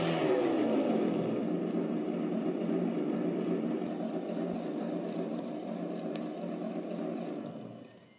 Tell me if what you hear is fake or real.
real